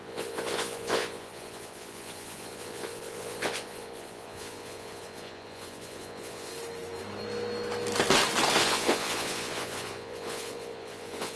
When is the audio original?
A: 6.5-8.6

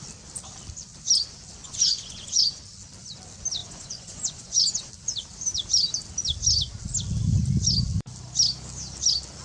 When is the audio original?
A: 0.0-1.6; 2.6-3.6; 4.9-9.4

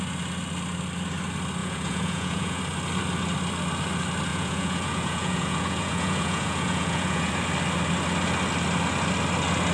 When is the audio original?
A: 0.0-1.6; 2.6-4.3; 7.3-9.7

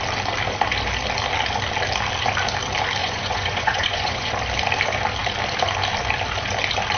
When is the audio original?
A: 0.0-3.0; 4.3-7.0

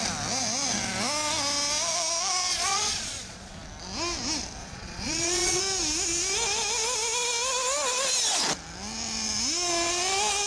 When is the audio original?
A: 0.0-2.5; 3.5-4.6; 5.6-10.5

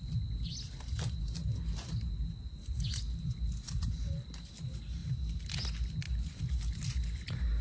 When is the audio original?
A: 0.0-7.6

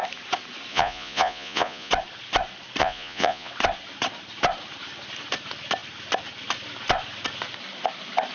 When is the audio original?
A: 0.0-0.7; 1.9-2.8; 3.5-8.3

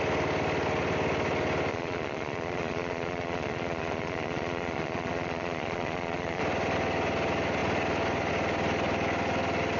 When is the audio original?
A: 0.0-1.7; 6.4-9.8